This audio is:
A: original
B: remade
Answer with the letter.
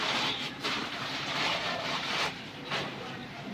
B